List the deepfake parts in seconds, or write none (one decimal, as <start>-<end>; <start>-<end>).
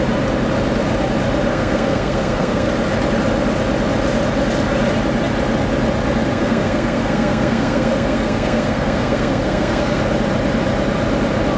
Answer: 1.5-2.7; 6.3-10.0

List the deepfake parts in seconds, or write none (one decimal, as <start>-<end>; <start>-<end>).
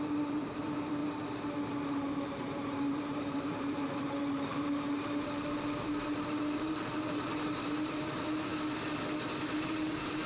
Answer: 0.0-1.0; 2.1-8.5; 9.5-10.3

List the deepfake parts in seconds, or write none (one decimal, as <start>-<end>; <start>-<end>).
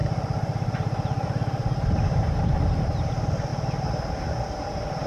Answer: 0.0-3.1; 3.5-5.1